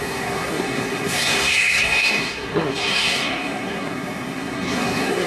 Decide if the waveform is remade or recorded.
remade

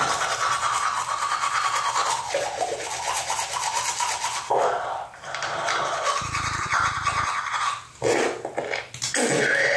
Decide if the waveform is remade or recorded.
recorded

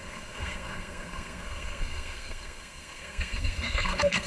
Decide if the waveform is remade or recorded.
remade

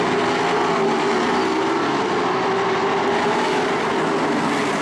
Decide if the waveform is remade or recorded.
recorded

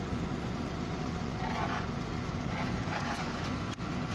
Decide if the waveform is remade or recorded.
remade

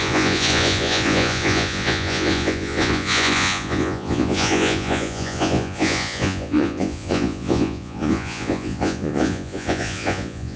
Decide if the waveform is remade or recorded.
remade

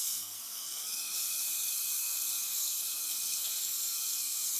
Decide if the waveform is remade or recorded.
remade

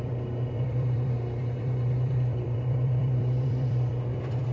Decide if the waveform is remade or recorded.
remade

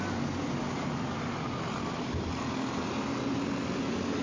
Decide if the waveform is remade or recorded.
recorded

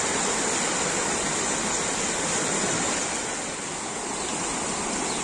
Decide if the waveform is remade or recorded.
recorded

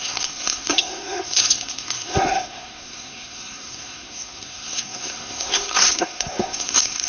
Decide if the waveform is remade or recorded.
remade